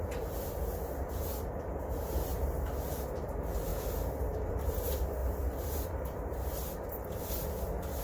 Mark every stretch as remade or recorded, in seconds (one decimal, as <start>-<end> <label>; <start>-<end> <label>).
0.0-5.2 recorded; 5.2-7.2 remade; 7.2-8.0 recorded